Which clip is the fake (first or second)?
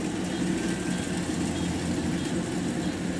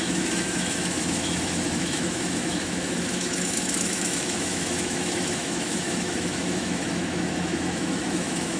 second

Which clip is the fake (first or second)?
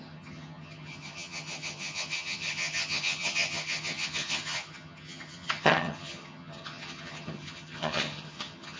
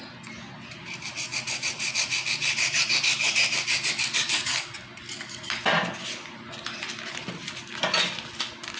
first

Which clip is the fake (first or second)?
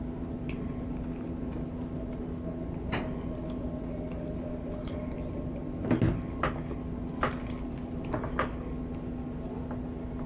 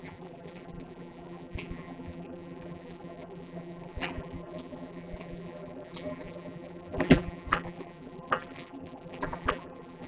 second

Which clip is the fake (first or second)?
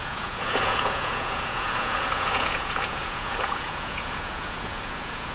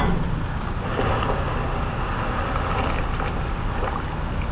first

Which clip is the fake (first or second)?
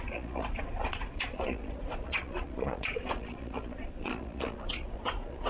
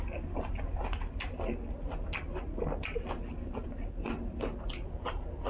first